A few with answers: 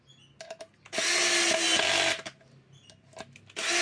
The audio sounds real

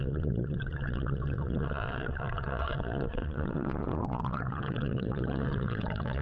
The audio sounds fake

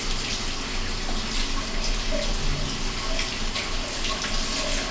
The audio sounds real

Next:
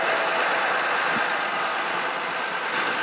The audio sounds real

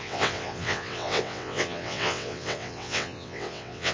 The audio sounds fake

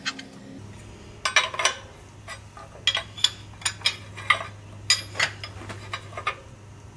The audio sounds real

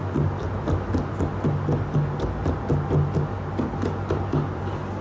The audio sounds real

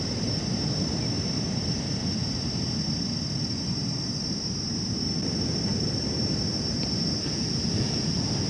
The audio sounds real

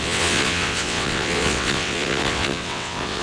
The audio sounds fake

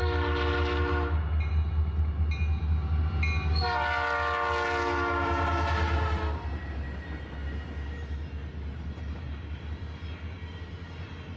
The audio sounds real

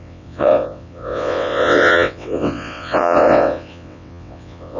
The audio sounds fake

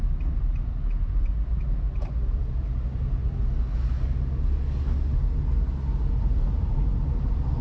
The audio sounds real